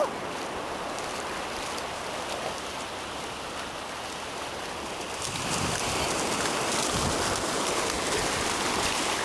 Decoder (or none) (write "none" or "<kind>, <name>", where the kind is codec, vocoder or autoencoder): none